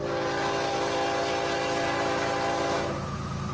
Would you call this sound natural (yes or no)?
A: yes